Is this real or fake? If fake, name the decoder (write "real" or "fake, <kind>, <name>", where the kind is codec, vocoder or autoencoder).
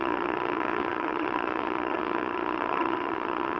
fake, vocoder, Vocos